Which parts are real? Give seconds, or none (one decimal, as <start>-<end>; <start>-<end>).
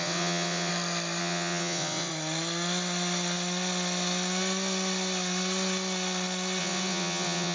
0.7-1.2; 2.1-6.6